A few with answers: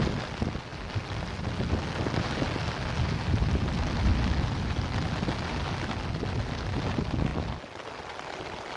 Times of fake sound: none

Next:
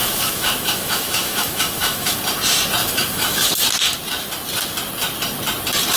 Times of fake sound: 0.0-2.2 (autoencoder, DAC-VAE); 2.8-3.4